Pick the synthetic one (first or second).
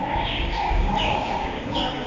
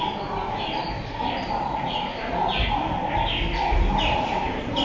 first